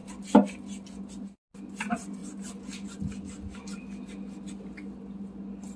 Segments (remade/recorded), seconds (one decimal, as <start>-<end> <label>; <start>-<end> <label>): 0.0-5.8 recorded